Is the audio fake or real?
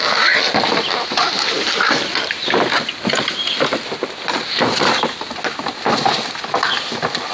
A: real